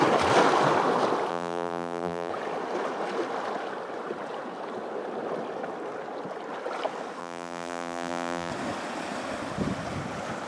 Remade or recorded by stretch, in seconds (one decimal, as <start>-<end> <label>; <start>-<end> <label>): 0.0-1.3 recorded; 1.3-2.3 remade; 2.3-7.2 recorded; 7.2-8.5 remade; 8.5-10.5 recorded